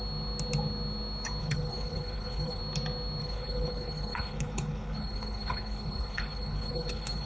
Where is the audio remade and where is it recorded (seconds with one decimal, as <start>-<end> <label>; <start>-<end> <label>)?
0.0-1.4 recorded; 1.4-2.6 remade; 2.6-3.2 recorded; 3.2-7.3 remade